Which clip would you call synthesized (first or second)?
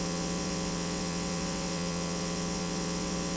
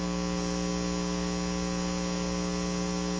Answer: first